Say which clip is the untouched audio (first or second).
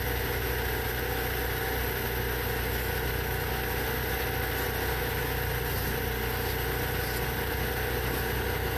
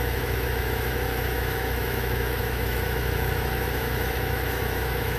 first